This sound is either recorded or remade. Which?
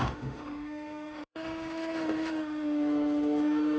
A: remade